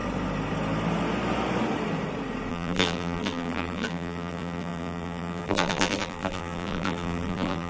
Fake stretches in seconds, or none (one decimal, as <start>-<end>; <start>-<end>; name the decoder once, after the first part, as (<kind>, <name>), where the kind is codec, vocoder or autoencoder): 2.5-7.7 (vocoder, BigVGAN v2)